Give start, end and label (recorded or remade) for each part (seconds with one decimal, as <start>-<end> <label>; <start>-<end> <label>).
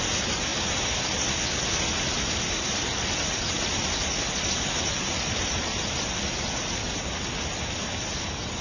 0.0-0.5 recorded; 0.5-4.7 remade; 4.7-8.6 recorded